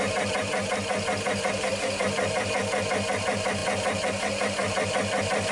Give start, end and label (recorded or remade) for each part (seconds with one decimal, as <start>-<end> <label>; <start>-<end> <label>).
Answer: 0.0-5.5 recorded